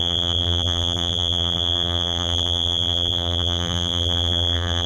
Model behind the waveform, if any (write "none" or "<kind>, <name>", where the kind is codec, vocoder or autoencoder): vocoder, BigVGAN v2